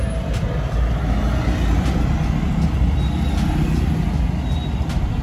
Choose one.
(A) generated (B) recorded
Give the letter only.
B